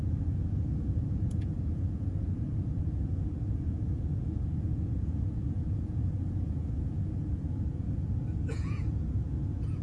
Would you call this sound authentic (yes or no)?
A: no